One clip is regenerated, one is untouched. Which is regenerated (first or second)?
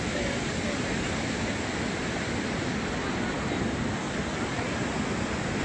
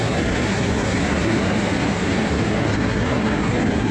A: second